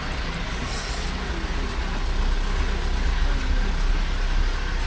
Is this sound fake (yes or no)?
no